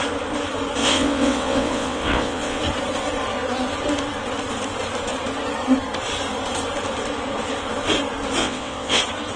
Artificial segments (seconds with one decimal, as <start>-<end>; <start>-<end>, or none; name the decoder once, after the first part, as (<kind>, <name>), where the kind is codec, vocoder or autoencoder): 0.8-2.6 (vocoder, WaveNeXt); 8.4-9.0